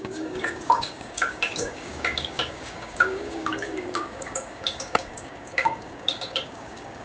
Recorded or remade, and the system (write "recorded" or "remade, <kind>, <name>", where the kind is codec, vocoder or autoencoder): remade, codec, DAC